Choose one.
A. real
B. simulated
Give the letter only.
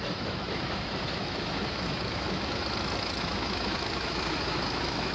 B